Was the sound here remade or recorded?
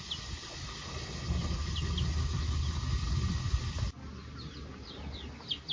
recorded